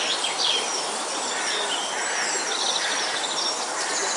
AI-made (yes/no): no